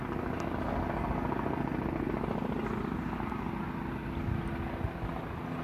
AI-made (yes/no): no